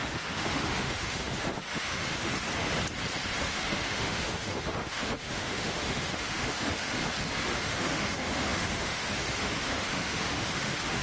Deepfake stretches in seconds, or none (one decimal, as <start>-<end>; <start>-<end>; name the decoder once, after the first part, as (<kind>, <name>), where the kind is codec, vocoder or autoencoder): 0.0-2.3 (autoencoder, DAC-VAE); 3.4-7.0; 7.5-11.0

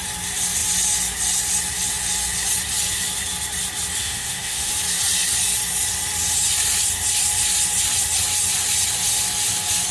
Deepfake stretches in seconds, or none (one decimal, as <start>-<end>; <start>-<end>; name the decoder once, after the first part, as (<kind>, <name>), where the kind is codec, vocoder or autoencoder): 4.0-4.7 (autoencoder, DAC-VAE)

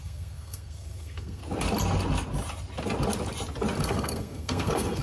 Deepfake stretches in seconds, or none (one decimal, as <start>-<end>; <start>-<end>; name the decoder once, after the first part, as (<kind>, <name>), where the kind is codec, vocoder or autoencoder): 0.0-1.4 (codec, SNAC); 3.8-5.0

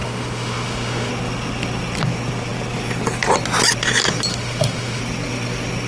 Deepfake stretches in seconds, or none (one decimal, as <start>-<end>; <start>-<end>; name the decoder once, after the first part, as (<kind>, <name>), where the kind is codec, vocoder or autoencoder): 0.0-1.1 (autoencoder, DAC-VAE); 4.3-5.0